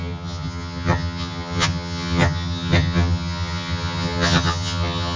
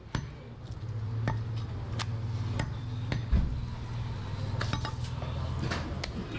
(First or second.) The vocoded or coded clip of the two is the first